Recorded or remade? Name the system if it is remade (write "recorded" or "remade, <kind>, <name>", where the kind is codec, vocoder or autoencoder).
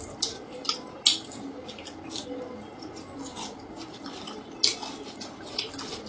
recorded